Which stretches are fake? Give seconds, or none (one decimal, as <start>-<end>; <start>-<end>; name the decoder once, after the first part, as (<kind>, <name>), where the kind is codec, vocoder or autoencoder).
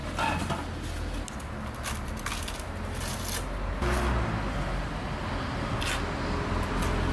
none